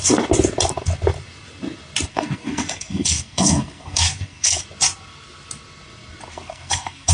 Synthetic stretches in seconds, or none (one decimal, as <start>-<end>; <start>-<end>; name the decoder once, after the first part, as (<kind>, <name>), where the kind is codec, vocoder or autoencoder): 2.1-4.6 (codec, SNAC); 6.3-7.1